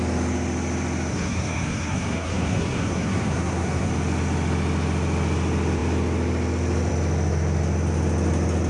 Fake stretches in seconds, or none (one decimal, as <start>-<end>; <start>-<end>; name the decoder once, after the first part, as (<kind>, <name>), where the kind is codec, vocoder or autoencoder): 1.1-3.9 (codec, SNAC)

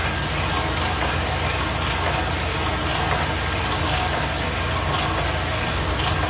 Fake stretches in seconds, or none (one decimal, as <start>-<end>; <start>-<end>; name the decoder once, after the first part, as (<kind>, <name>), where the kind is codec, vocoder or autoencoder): none

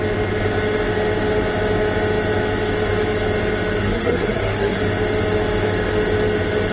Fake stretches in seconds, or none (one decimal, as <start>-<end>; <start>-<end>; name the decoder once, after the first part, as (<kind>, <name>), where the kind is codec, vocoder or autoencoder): 3.8-4.8 (codec, SNAC)

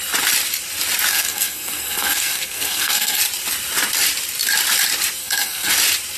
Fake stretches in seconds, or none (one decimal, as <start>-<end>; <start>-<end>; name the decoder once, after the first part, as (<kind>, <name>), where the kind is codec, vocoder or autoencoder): 1.1-3.2 (codec, SNAC); 5.2-5.7

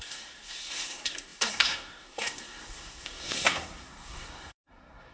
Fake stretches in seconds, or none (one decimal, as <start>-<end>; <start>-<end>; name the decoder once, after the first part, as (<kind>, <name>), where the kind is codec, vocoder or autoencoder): 0.0-5.1 (codec, SNAC)

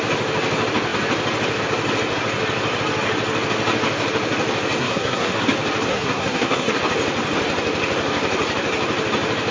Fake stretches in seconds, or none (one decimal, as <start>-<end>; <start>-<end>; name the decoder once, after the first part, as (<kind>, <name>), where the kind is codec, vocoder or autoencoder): 4.8-5.4 (codec, SNAC); 5.9-6.8

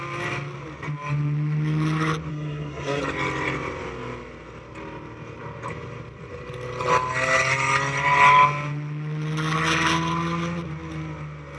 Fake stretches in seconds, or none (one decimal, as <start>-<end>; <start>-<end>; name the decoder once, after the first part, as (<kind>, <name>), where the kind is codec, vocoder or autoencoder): 2.3-3.0 (codec, SNAC)